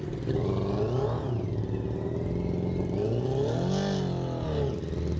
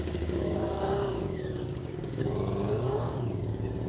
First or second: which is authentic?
first